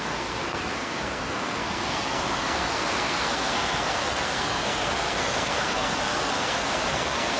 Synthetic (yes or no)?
yes